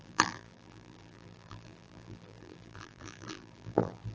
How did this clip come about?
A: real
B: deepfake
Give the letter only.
B